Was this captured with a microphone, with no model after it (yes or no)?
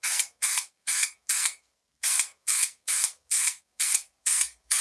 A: no